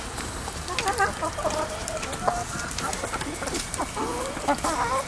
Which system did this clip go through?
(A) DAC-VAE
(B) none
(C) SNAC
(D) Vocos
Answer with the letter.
B